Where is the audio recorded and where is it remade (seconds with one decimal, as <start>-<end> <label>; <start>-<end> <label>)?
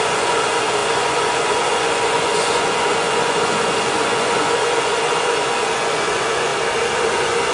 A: 0.0-6.5 remade; 6.5-7.1 recorded; 7.1-7.5 remade